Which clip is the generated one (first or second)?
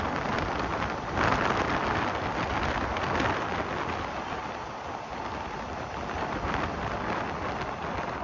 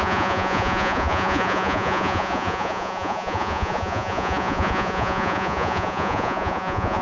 second